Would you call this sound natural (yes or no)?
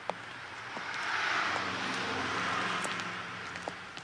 yes